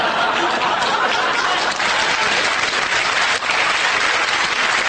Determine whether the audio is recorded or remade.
recorded